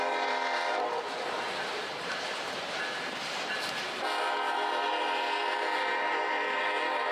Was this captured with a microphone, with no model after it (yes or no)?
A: no